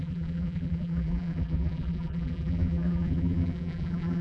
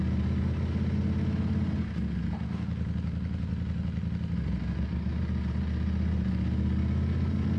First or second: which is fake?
first